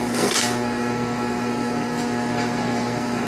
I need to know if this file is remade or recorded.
remade